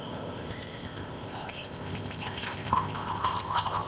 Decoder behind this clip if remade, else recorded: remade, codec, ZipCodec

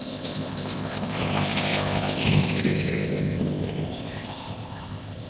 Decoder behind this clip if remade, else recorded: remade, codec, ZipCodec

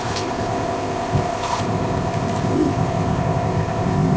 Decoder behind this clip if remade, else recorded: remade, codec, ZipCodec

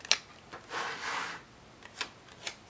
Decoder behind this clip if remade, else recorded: recorded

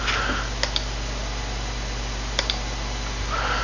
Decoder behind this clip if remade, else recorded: recorded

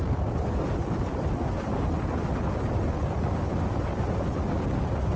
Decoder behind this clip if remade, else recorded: recorded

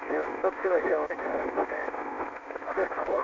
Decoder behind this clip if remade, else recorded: remade, codec, ZipCodec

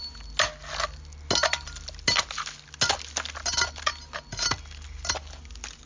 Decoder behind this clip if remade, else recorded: recorded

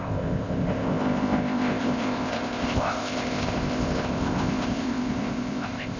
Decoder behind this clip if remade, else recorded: remade, codec, ZipCodec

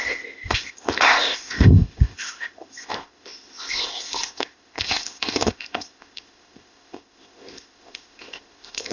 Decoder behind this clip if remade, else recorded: remade, codec, ZipCodec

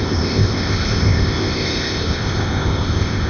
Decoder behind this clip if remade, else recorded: remade, codec, ZipCodec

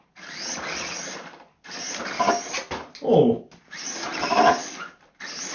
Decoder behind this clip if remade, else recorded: recorded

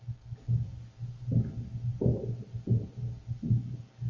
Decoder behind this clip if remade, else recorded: recorded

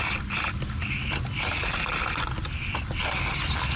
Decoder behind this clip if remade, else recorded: recorded